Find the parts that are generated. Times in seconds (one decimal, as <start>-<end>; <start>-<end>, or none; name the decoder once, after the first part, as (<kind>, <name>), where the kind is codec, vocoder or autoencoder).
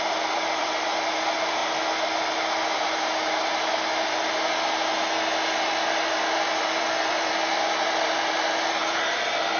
0.0-1.6 (vocoder, BigVGAN v2); 2.8-3.5; 5.7-9.6